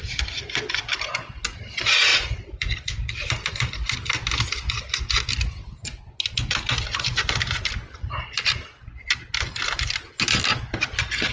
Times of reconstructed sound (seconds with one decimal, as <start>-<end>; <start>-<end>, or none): 2.1-3.5